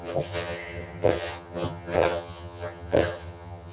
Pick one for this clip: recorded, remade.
remade